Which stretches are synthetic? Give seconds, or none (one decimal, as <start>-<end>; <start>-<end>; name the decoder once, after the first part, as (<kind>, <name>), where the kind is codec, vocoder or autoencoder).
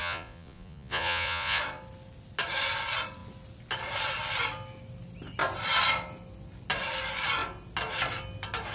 0.0-1.6 (vocoder, Vocos)